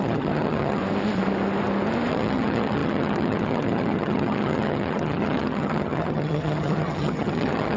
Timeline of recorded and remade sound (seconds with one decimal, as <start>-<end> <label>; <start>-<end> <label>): 0.0-0.8 remade; 0.8-2.1 recorded; 2.1-7.8 remade